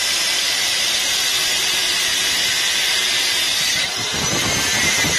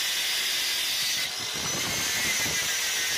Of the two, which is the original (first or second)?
second